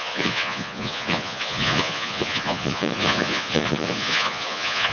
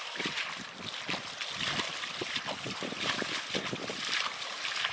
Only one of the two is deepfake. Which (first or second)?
first